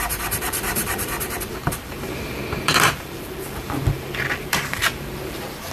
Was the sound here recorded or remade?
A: remade